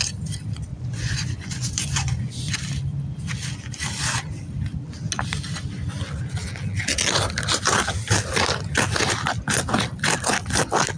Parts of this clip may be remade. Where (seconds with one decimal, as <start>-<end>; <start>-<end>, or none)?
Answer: 0.7-2.5